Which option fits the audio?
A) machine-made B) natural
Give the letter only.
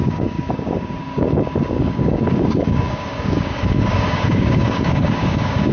A